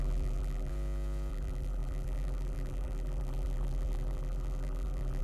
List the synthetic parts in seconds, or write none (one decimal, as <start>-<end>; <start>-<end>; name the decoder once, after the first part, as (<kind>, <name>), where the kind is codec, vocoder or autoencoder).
0.0-0.7 (vocoder, BigVGAN v2); 1.3-5.2